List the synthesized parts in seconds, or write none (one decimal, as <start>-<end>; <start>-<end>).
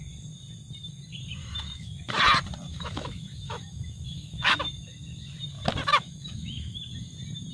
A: 1.4-2.1; 2.7-4.6; 5.9-6.8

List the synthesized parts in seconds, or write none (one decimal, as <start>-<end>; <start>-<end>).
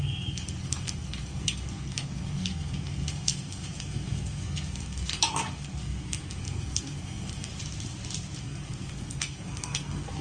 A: 0.0-7.5; 8.4-10.2